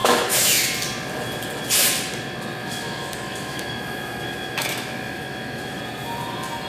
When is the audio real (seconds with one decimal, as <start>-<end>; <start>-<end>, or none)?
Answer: 0.6-2.6; 5.8-6.7